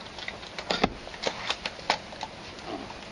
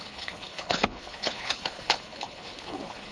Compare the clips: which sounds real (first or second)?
first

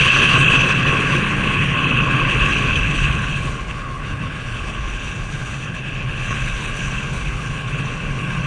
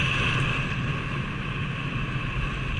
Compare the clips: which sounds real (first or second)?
second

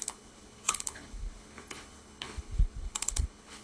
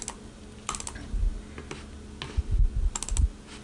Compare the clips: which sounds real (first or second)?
second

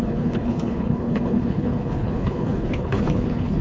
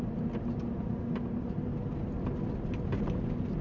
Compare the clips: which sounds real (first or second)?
second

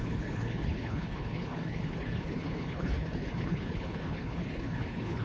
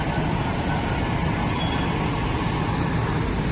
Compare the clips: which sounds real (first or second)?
second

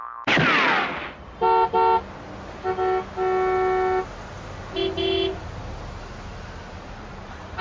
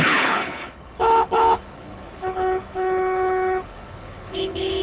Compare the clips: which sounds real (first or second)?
first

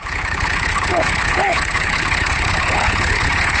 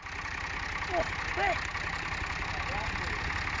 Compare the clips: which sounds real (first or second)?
second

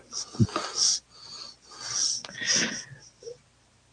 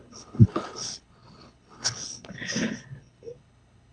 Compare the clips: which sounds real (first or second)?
first